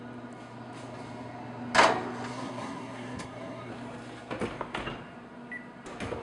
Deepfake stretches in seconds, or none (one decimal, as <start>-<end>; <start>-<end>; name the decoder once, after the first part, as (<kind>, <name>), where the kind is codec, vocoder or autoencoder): 2.3-3.7 (codec, SNAC)